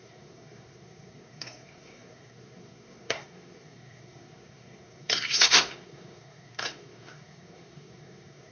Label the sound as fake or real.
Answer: fake